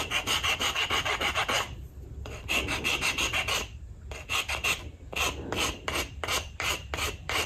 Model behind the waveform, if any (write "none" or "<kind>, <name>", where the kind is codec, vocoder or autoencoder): vocoder, BigVGAN v2